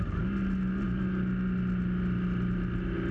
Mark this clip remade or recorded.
recorded